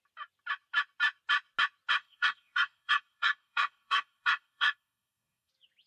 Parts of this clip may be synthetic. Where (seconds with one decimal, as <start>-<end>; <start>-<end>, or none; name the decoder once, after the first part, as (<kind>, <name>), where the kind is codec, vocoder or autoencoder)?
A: 2.0-5.5 (codec, DAC)